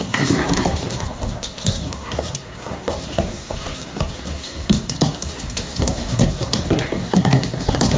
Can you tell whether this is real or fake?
fake